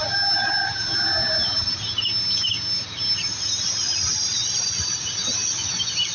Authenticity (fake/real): real